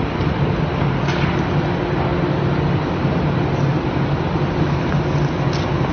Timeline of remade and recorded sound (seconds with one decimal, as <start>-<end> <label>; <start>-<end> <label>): 0.0-5.9 recorded